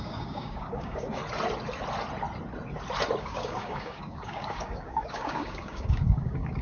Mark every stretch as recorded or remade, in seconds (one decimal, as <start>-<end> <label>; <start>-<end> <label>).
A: 0.0-1.2 remade; 1.2-3.2 recorded; 3.2-6.6 remade